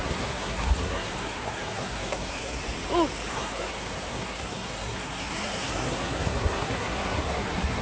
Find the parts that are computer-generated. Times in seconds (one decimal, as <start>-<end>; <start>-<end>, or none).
0.0-2.6; 3.3-7.8